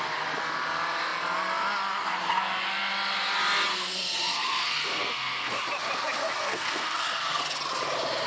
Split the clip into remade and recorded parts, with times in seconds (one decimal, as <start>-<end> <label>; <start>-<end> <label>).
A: 0.0-3.7 recorded; 3.7-5.6 remade; 5.6-6.2 recorded; 6.2-7.4 remade; 7.4-8.3 recorded

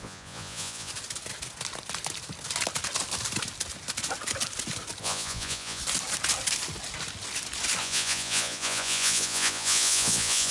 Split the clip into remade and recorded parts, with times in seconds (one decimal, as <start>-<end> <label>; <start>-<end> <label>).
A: 0.0-0.9 remade; 0.9-5.0 recorded; 5.0-5.8 remade; 5.8-7.8 recorded; 7.8-10.5 remade

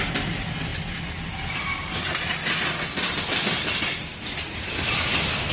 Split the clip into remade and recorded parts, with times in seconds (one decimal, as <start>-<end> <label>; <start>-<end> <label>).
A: 0.0-5.5 recorded

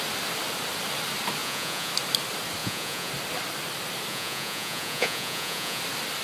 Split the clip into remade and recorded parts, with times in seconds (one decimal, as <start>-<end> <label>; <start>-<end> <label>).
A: 0.0-1.4 recorded; 1.4-1.9 remade; 1.9-2.6 recorded; 2.6-3.1 remade; 3.1-4.1 recorded; 4.1-5.8 remade; 5.8-6.2 recorded

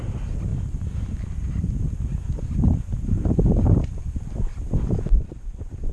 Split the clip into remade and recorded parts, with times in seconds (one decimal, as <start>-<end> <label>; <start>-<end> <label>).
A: 0.0-5.9 recorded